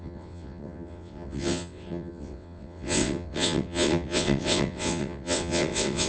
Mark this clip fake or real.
fake